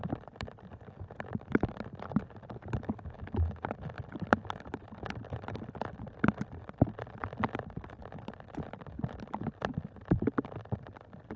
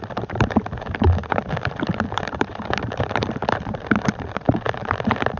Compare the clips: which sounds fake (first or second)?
second